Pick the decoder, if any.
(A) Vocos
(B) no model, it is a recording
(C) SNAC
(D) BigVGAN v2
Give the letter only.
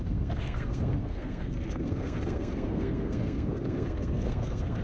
C